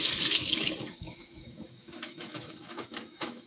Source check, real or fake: fake